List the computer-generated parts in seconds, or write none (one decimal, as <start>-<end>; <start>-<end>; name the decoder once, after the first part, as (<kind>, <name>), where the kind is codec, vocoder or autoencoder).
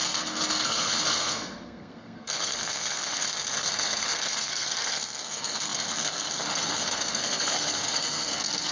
0.0-8.7 (codec, SNAC)